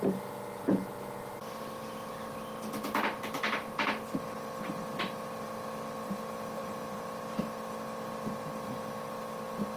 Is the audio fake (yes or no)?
no